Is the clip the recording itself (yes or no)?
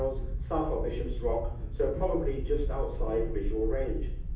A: no